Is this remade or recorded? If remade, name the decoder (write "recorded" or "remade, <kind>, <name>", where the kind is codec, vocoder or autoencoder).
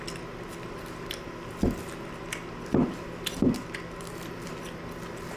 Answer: recorded